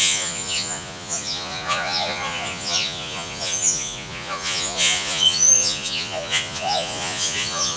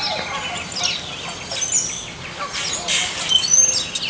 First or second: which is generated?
first